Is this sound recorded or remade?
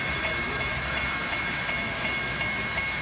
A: remade